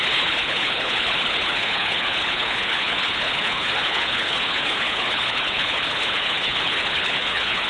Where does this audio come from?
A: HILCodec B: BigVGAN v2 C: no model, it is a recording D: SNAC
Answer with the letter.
A